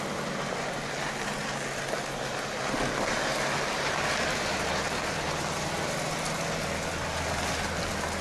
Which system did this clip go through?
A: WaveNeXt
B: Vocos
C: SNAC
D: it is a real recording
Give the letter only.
D